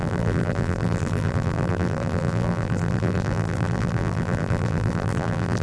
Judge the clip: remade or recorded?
remade